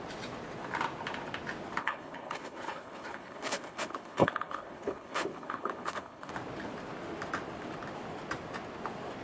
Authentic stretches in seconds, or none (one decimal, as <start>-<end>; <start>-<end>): 0.0-1.8; 6.3-9.2